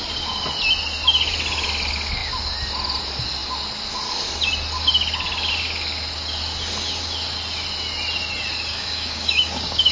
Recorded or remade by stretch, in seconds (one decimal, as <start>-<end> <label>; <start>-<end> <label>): 0.0-8.7 recorded; 8.7-9.9 remade